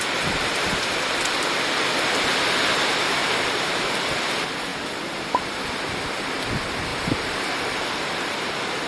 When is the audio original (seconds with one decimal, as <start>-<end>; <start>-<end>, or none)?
0.0-3.2; 3.9-6.9; 8.5-8.9